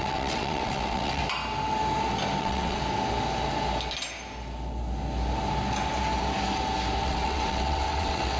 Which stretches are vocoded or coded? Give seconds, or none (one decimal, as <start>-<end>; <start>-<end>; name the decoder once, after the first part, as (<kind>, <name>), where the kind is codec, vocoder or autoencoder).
0.0-1.2 (vocoder, WaveNeXt); 2.4-2.8; 7.0-8.4